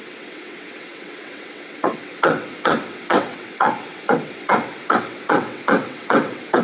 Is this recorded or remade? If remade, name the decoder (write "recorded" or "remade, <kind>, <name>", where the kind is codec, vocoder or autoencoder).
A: remade, vocoder, WaveNeXt